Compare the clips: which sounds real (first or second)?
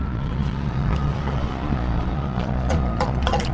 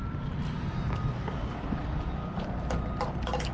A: second